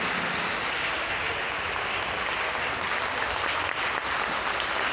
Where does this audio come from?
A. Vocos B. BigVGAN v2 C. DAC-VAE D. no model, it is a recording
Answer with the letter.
D